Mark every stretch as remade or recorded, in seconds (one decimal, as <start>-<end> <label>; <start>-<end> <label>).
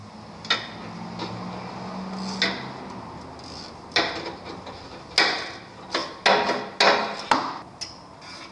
0.0-8.5 recorded